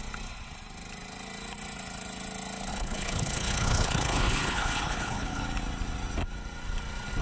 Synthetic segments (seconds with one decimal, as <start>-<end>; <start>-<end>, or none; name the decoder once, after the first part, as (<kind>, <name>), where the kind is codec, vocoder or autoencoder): 2.7-5.4 (codec, HILCodec)